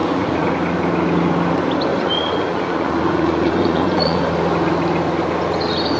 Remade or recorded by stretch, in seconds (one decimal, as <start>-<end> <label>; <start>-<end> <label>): 0.0-0.5 remade; 0.5-1.9 recorded; 1.9-4.2 remade; 4.2-6.0 recorded